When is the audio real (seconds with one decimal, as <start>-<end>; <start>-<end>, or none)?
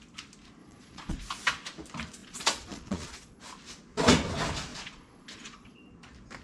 0.0-0.6; 1.2-2.2; 3.4-4.7; 5.9-6.4